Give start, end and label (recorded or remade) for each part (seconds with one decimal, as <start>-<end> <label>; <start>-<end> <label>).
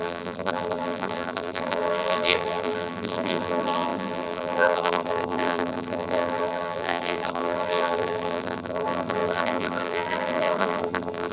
0.0-11.3 remade